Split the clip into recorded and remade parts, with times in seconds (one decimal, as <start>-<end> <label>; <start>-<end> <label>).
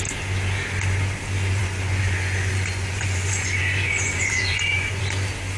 0.0-1.6 recorded; 1.6-5.0 remade; 5.0-5.6 recorded